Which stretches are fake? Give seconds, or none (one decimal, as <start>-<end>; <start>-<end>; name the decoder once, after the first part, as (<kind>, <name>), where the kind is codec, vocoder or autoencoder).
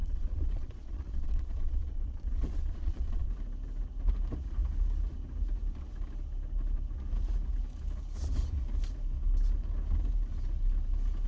0.0-3.3 (vocoder, Vocos)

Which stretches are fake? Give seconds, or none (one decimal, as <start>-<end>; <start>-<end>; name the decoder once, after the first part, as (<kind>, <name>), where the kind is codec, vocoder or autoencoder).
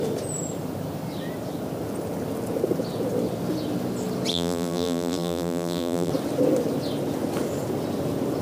4.3-6.1 (vocoder, BigVGAN v2)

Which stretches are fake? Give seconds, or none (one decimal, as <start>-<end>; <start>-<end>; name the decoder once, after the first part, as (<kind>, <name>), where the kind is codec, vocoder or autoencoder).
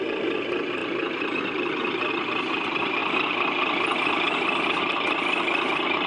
none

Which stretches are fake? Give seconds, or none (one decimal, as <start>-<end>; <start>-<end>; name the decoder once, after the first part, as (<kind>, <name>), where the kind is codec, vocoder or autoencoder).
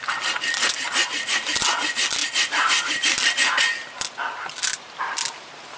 none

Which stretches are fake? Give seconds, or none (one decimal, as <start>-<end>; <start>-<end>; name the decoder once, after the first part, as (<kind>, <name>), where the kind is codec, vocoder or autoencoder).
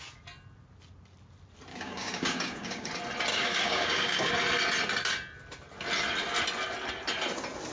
1.7-2.9 (codec, DAC); 3.3-4.3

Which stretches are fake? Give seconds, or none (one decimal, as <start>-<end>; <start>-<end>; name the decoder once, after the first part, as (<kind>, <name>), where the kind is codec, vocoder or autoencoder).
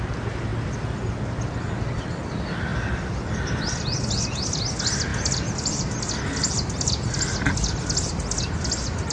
none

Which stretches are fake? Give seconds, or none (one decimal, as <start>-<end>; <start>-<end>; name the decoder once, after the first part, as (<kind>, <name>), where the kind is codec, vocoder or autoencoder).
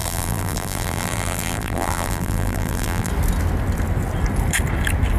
0.0-3.1 (vocoder, BigVGAN v2)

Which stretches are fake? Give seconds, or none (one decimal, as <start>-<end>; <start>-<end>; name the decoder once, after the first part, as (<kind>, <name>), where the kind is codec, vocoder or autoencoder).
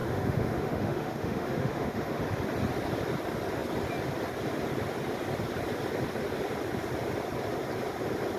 0.0-2.2 (autoencoder, DAC-VAE)